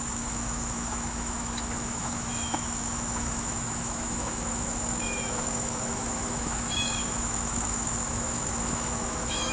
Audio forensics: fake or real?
fake